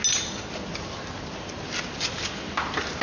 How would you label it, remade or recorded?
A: recorded